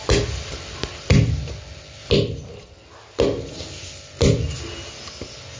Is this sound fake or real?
real